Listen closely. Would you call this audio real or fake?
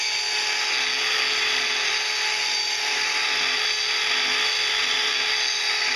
real